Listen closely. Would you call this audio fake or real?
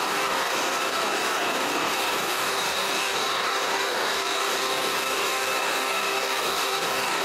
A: fake